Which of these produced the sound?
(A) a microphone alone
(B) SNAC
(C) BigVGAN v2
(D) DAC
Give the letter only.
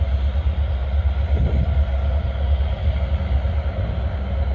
A